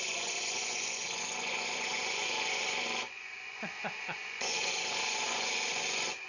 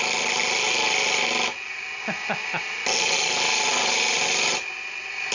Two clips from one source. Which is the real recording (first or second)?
second